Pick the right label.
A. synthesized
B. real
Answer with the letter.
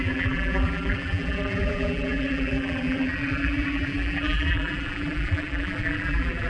A